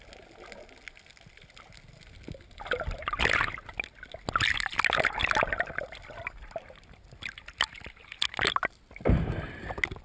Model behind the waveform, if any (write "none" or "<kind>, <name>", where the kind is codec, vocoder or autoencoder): none